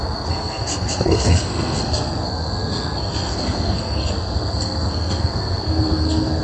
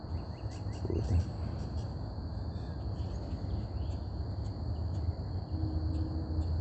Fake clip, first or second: first